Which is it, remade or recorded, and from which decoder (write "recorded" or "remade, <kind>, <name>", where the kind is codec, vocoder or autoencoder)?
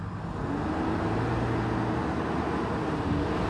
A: recorded